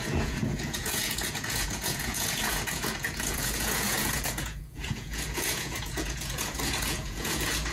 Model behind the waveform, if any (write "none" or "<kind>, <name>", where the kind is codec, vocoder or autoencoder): vocoder, Vocos